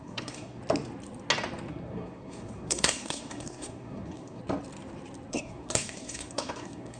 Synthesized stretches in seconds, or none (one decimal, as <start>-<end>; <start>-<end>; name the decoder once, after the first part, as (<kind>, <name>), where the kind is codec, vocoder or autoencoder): 0.0-0.6 (codec, SNAC); 1.7-4.4; 5.3-7.0